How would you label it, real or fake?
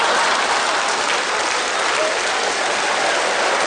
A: real